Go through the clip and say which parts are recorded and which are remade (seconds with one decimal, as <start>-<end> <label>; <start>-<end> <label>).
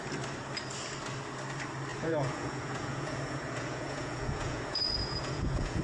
0.0-1.9 recorded; 1.9-5.8 remade